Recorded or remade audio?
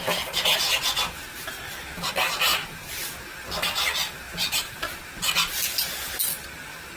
recorded